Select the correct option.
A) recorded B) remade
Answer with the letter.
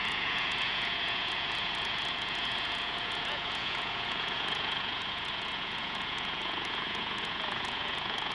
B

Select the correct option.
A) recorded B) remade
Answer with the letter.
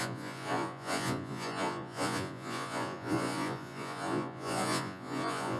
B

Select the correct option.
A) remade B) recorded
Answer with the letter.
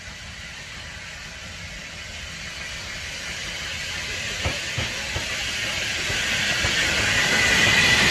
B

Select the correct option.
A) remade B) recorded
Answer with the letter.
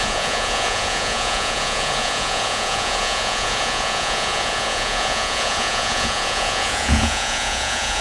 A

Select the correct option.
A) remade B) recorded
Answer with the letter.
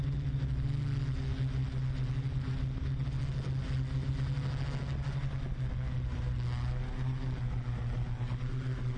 B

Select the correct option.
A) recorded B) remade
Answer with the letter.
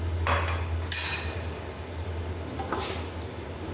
A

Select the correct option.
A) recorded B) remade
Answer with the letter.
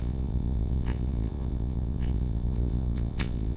B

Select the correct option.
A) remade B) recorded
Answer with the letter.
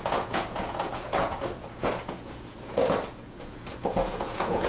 A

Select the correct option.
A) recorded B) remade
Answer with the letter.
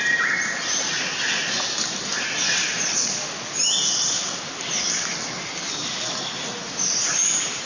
A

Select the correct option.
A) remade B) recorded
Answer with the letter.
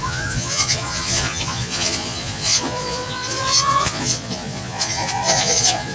A